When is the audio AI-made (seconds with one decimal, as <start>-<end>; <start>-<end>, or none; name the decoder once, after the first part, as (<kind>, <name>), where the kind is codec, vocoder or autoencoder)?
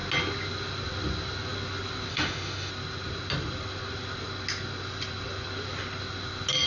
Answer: 2.1-2.7 (autoencoder, DAC-VAE)